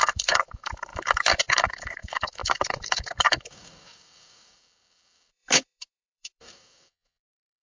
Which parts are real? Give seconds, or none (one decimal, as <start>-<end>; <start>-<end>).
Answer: none

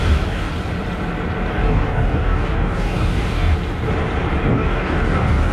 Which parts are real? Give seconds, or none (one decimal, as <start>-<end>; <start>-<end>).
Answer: 0.5-1.5; 3.5-4.5

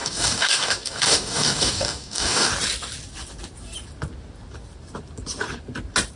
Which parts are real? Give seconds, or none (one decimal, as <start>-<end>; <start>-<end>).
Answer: 2.5-6.2

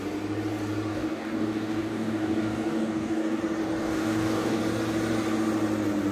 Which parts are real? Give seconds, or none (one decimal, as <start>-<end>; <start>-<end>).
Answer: 0.0-0.9; 3.4-3.8; 4.6-6.1